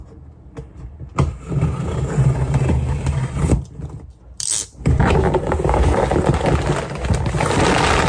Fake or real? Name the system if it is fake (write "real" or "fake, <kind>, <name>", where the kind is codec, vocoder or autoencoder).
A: real